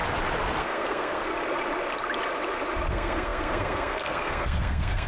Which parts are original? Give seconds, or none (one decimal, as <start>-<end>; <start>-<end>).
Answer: 0.0-0.6; 1.3-2.9